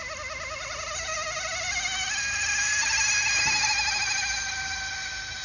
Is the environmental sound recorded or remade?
recorded